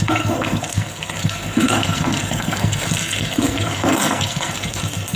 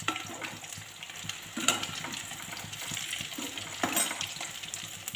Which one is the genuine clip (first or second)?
second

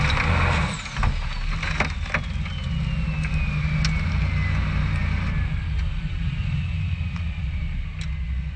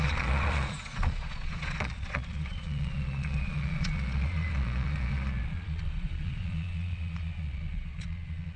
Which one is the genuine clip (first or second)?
first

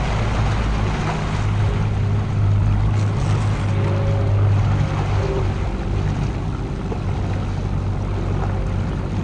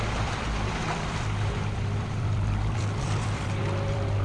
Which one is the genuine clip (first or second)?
first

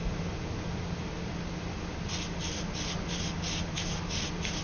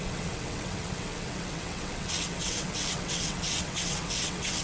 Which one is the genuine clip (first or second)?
first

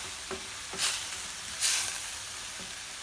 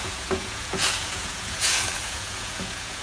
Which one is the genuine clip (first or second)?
first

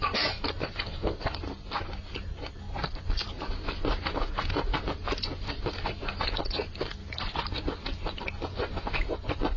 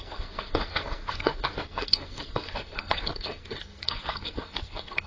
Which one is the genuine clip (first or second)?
first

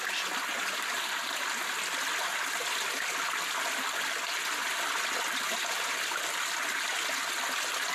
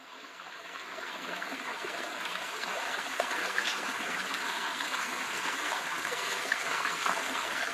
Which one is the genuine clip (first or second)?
first